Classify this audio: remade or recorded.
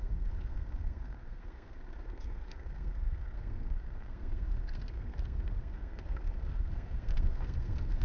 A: remade